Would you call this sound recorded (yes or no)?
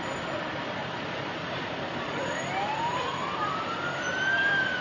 no